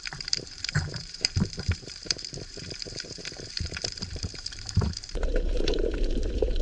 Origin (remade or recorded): remade